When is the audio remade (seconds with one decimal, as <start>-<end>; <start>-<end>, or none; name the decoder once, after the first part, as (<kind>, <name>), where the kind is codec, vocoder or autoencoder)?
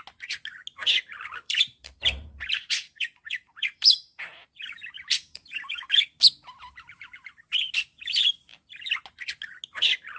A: 0.8-5.9 (vocoder, BigVGAN v2)